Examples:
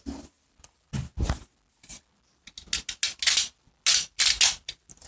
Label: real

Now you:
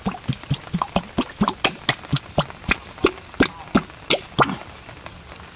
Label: real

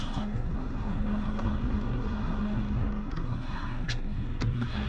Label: fake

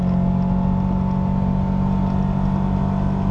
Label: real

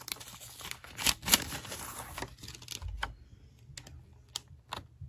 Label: real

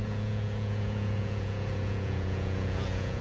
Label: fake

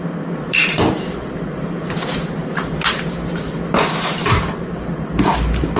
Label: fake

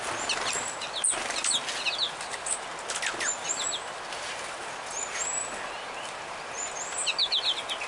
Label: real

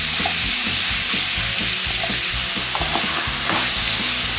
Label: real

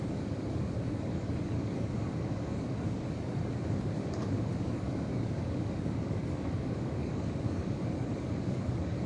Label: fake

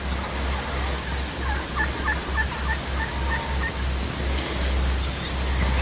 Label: real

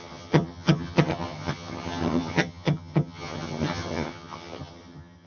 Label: fake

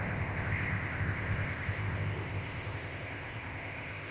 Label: fake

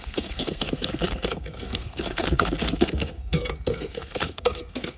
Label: fake